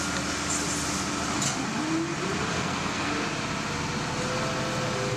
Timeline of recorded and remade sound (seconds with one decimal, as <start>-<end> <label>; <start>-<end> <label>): 0.0-2.5 recorded; 2.5-3.1 remade; 3.1-5.2 recorded